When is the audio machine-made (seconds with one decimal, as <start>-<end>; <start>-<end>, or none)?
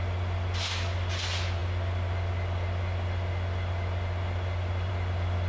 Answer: none